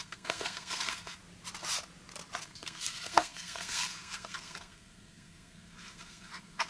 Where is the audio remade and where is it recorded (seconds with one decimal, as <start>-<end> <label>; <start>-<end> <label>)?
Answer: 0.0-1.2 remade; 1.2-2.4 recorded; 2.4-6.7 remade